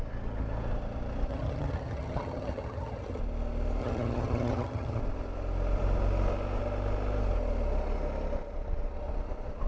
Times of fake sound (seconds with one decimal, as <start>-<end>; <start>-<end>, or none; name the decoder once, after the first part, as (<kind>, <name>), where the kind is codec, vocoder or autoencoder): 1.3-3.2 (vocoder, HiFi-GAN); 3.8-5.0